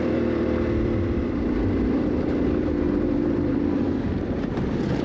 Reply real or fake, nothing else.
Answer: fake